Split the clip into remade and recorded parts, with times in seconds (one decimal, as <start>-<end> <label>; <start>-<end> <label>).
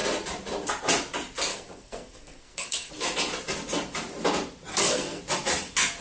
0.0-1.5 recorded; 1.5-2.9 remade; 2.9-4.7 recorded; 4.7-5.2 remade; 5.2-6.0 recorded